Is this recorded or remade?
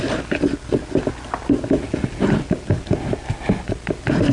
recorded